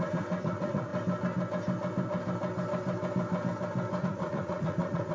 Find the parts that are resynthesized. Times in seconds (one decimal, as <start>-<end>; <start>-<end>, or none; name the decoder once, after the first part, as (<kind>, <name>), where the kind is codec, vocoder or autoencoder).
0.0-0.9 (vocoder, Vocos); 4.0-5.1